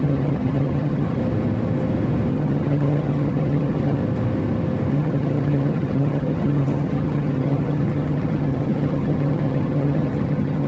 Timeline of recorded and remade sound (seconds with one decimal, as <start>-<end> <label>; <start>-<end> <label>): 0.0-1.2 remade; 1.2-2.3 recorded; 2.3-4.0 remade; 4.0-4.9 recorded; 4.9-10.7 remade